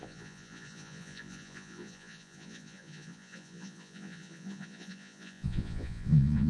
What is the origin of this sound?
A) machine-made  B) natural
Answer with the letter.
A